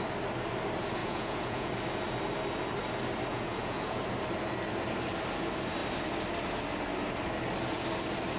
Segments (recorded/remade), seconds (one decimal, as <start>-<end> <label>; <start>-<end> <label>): 0.0-1.0 recorded; 1.0-1.7 remade; 1.7-3.3 recorded; 3.3-4.0 remade; 4.0-8.4 recorded